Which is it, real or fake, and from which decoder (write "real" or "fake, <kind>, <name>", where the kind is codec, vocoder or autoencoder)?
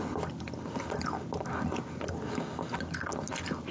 real